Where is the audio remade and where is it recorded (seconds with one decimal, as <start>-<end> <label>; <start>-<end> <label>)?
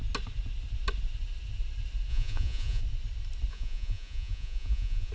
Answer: 0.0-2.1 recorded; 2.1-2.8 remade; 2.8-3.5 recorded; 3.5-5.1 remade